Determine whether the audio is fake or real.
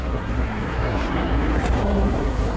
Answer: fake